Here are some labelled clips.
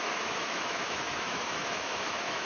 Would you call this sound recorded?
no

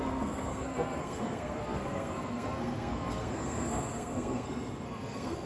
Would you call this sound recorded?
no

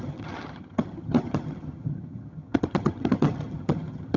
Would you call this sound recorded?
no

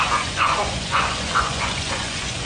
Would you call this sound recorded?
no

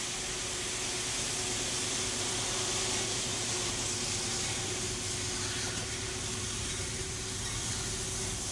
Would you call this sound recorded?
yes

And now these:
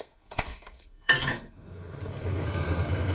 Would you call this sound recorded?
no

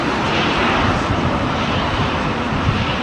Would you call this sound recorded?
no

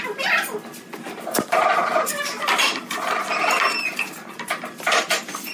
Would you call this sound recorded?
yes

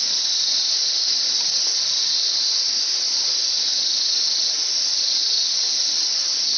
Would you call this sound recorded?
yes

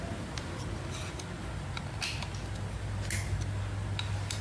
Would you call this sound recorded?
yes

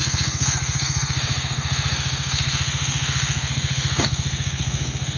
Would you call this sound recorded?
no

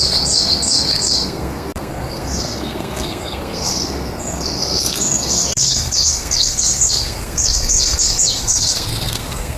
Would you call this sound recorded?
no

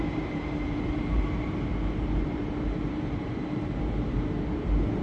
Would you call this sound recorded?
no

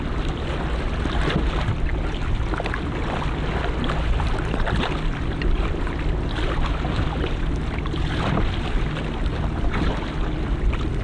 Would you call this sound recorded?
yes